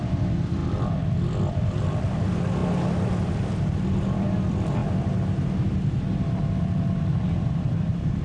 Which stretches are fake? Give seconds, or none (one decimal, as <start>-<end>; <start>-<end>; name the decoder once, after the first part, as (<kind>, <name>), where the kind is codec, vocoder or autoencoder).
0.0-0.6 (vocoder, BigVGAN v2); 1.5-4.8; 7.1-8.2